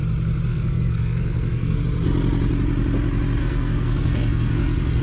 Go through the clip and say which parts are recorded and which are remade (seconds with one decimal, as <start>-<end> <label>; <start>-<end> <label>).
0.0-0.5 recorded; 0.5-1.8 remade; 1.8-3.4 recorded; 3.4-5.0 remade

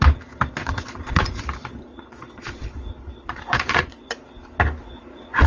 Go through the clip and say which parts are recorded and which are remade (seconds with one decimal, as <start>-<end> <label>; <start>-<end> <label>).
0.0-0.6 recorded; 0.6-1.4 remade; 1.4-1.9 recorded; 1.9-4.1 remade; 4.1-4.8 recorded; 4.8-5.5 remade

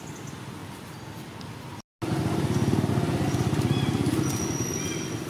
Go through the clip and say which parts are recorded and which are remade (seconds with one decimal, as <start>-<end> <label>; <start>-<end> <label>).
0.0-5.3 recorded